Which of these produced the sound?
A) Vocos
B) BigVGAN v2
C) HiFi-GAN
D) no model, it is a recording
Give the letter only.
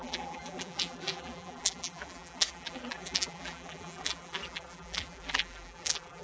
B